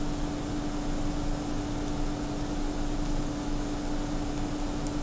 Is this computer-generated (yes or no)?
no